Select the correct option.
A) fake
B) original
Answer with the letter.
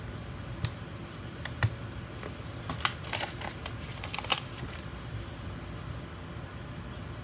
B